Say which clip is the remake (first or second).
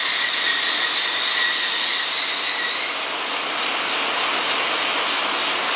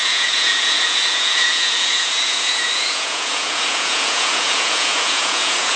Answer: second